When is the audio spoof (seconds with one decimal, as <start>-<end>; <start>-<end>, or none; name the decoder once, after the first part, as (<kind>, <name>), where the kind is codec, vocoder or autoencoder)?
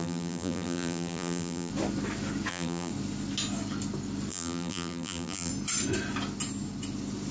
0.0-1.7 (vocoder, BigVGAN v2); 2.5-2.9; 4.3-5.5